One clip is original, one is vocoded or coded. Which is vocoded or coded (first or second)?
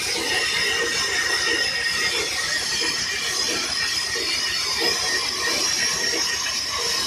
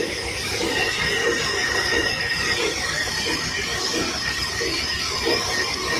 second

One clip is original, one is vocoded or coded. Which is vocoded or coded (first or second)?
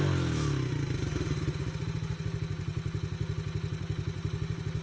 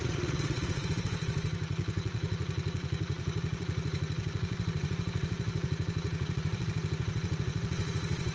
second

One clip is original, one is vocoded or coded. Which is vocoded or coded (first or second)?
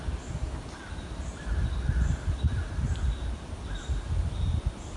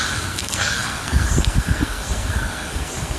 second